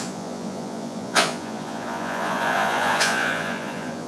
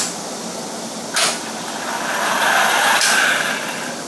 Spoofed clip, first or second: first